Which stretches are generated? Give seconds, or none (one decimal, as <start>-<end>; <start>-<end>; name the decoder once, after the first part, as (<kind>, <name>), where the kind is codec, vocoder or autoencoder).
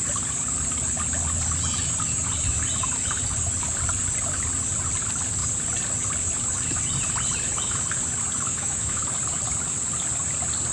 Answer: 8.5-9.0 (autoencoder, DAC-VAE)